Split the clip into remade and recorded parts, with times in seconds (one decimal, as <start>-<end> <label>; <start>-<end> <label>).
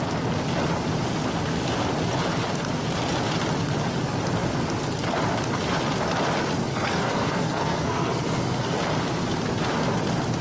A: 0.0-6.7 recorded; 6.7-8.8 remade; 8.8-10.4 recorded